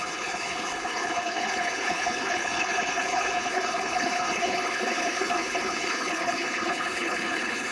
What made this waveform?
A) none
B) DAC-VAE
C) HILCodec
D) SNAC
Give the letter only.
C